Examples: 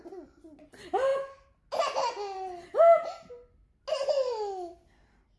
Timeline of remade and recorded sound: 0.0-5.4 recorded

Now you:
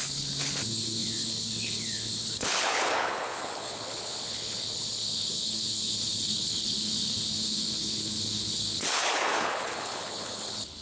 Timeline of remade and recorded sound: 0.0-10.8 remade

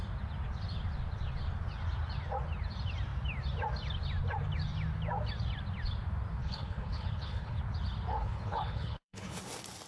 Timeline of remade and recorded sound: 0.0-6.4 recorded; 6.4-7.6 remade; 7.6-8.1 recorded; 8.1-9.4 remade; 9.4-9.9 recorded

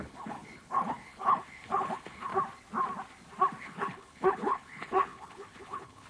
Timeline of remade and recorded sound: 0.0-2.3 remade; 2.3-3.6 recorded; 3.6-6.1 remade

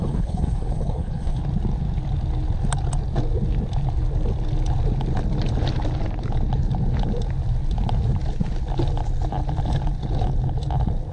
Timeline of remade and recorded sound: 0.0-1.4 remade; 1.4-11.1 recorded